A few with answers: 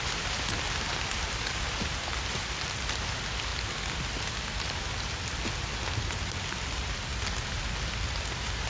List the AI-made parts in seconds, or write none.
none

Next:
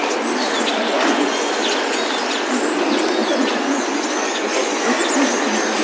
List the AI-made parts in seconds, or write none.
0.9-2.0 (vocoder, Vocos); 3.2-5.1

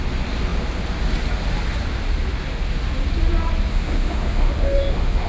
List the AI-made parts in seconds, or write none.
3.7-5.3 (autoencoder, DAC-VAE)

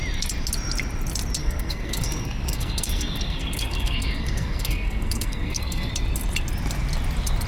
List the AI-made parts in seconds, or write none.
1.4-5.9 (codec, SNAC)

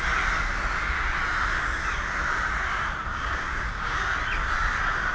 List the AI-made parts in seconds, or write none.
3.1-4.0 (codec, DAC)

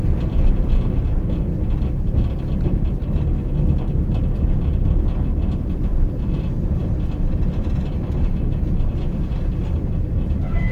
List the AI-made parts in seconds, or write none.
5.9-8.4 (vocoder, BigVGAN v2)